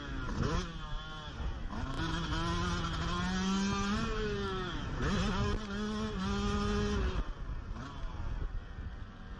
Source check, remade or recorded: recorded